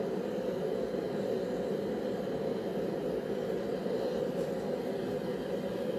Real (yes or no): yes